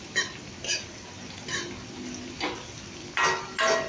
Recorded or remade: recorded